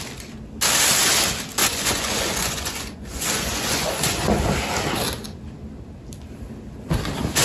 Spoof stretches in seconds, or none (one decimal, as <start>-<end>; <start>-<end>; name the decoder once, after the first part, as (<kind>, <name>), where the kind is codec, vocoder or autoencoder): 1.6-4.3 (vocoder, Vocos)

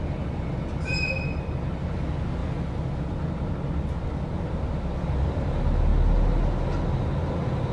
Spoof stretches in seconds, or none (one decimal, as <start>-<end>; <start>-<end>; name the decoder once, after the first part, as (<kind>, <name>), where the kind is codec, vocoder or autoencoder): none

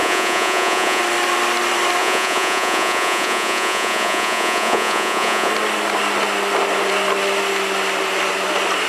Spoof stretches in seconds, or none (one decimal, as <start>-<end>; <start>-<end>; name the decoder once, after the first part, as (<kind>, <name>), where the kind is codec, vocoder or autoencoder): 0.0-1.0 (vocoder, Vocos); 2.0-5.5

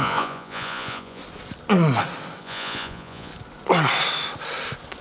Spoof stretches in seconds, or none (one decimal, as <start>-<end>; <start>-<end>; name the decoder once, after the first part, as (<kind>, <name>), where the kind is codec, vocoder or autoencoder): 0.0-1.2 (vocoder, Vocos); 2.4-3.3

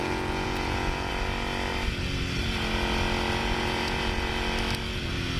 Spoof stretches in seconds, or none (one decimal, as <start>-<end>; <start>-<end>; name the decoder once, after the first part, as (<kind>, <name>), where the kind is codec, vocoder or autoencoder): 0.0-1.1 (vocoder, Vocos); 3.4-4.3

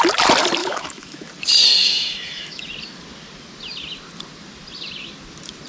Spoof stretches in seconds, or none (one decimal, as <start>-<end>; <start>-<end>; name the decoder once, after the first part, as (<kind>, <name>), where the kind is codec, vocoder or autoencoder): 0.6-1.3 (autoencoder, DAC-VAE); 1.8-2.7